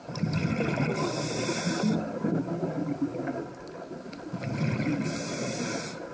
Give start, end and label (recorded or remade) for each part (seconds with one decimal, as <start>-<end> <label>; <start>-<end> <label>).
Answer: 0.0-6.1 recorded